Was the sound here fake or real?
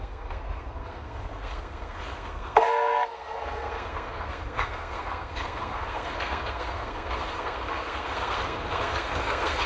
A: fake